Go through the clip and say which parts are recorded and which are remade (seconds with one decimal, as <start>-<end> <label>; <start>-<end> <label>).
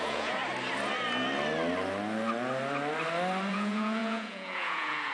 0.0-0.4 remade; 0.4-3.5 recorded; 3.5-5.1 remade